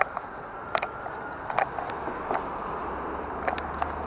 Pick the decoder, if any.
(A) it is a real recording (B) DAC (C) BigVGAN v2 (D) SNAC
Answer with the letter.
A